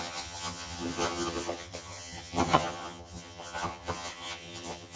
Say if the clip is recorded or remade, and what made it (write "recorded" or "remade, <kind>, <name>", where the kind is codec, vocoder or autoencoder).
remade, vocoder, HiFi-GAN